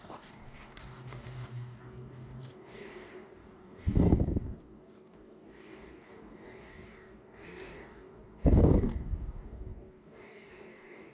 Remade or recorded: remade